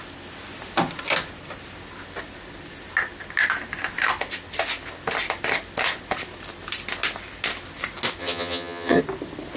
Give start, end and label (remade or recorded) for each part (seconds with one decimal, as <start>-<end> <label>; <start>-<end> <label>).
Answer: 0.0-8.2 recorded; 8.2-9.0 remade; 9.0-9.6 recorded